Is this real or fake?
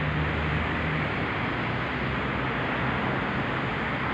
real